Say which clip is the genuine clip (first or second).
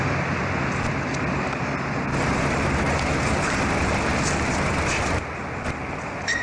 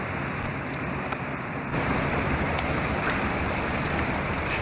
first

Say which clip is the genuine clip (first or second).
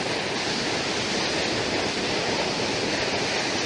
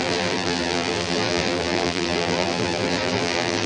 first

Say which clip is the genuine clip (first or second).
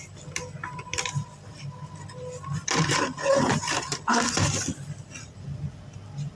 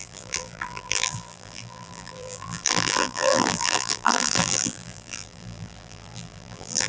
first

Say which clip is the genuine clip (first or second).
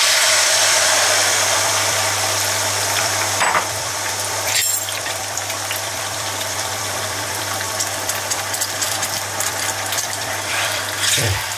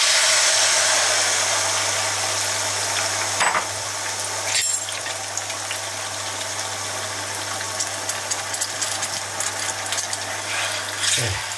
second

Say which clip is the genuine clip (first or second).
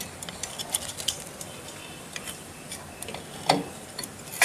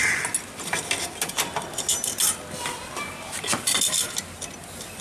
second